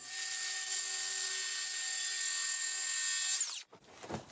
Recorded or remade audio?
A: recorded